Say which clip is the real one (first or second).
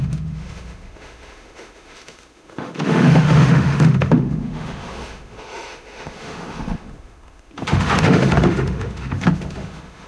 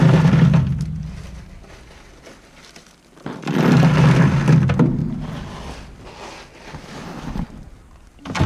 second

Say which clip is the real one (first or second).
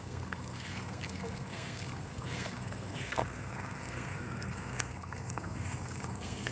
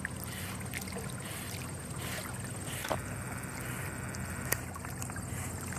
second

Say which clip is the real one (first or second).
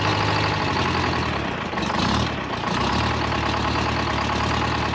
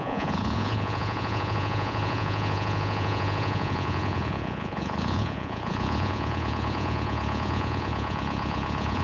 first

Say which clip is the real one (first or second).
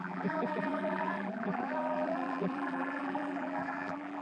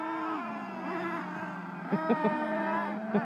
second